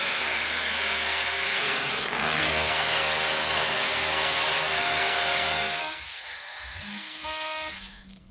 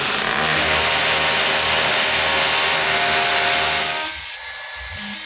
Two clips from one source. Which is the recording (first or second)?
second